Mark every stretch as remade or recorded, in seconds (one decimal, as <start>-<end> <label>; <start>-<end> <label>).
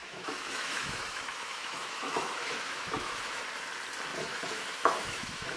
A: 0.0-3.4 remade; 3.4-4.1 recorded; 4.1-5.6 remade